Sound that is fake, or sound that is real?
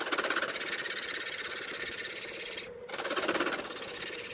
real